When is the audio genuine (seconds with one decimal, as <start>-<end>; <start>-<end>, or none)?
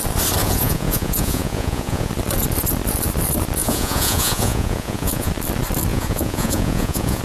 0.0-0.4; 2.1-3.6; 5.3-5.9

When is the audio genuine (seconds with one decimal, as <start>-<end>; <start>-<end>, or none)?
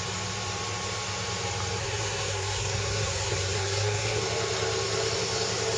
0.0-1.8; 4.2-5.8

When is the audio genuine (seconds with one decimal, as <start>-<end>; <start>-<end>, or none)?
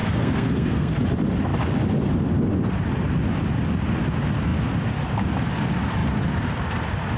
0.9-7.2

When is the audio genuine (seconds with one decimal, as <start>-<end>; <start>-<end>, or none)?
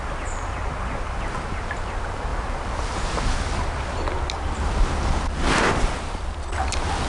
0.0-7.1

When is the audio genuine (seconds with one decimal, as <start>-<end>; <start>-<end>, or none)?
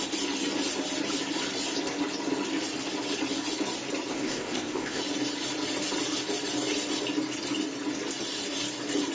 0.0-4.1; 5.0-9.1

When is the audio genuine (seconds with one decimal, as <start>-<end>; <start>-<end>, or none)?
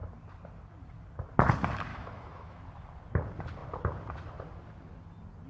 0.0-1.9; 2.6-5.5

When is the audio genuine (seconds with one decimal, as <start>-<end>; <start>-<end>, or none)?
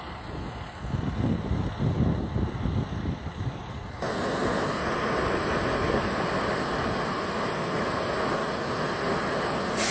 0.0-9.9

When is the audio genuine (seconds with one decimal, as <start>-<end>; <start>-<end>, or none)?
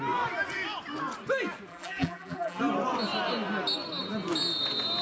0.0-1.7; 2.6-5.0